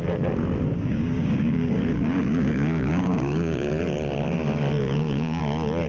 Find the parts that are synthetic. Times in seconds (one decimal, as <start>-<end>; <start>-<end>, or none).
0.7-3.7; 4.8-5.4